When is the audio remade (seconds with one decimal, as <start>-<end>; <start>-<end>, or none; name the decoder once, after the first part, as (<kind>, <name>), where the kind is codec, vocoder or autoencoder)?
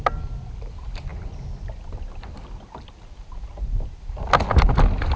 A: none